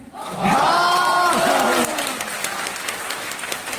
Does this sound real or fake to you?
real